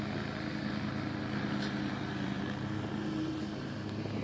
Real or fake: real